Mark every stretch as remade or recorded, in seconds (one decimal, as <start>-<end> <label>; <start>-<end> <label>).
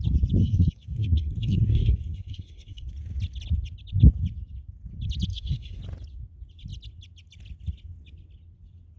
0.0-0.4 recorded; 0.4-2.9 remade; 2.9-5.3 recorded; 5.3-5.8 remade; 5.8-9.0 recorded